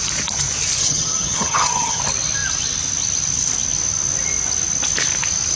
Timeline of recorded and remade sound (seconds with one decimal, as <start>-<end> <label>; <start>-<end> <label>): 0.0-0.8 recorded; 0.8-2.0 remade; 2.0-5.6 recorded